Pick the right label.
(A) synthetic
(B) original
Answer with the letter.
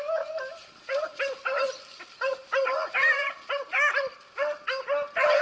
B